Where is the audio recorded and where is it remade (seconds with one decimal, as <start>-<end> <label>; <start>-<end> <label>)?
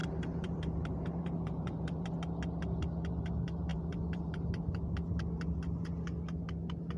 0.0-2.1 remade; 2.1-3.7 recorded; 3.7-4.4 remade; 4.4-7.0 recorded